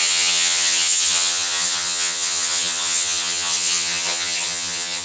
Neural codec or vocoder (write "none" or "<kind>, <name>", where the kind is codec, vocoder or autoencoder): vocoder, HiFi-GAN